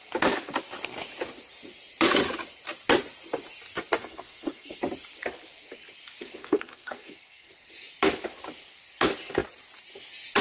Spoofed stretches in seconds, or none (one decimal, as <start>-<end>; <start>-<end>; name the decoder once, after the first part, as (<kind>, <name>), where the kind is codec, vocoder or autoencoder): 4.0-4.8 (codec, SNAC); 6.4-7.5